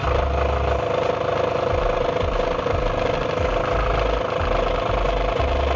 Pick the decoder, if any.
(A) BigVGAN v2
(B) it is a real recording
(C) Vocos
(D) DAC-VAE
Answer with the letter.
B